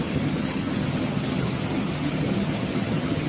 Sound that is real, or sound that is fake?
fake